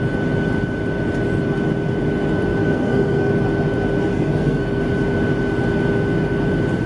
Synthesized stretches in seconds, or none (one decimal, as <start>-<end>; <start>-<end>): 2.6-3.3; 4.1-4.8